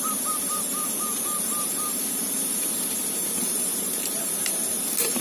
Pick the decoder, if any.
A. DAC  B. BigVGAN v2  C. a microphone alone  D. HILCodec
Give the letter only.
B